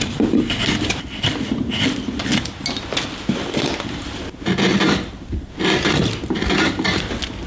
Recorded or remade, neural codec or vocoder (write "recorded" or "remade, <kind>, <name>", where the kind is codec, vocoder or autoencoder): recorded